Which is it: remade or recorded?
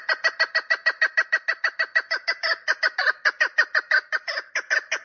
recorded